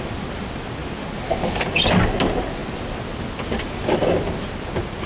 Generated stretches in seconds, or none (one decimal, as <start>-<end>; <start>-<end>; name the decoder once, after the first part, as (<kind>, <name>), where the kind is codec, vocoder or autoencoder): none